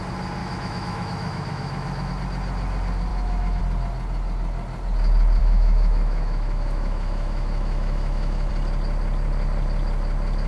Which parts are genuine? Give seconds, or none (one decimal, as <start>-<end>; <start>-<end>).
0.0-0.4; 2.1-3.1; 3.6-5.4; 8.5-10.5

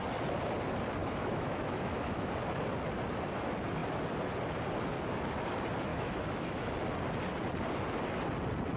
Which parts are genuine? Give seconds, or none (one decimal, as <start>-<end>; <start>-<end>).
0.0-1.0; 2.3-5.9; 6.7-8.8